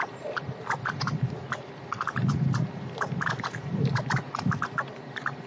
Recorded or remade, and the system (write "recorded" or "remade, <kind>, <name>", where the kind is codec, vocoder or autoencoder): remade, vocoder, BigVGAN v2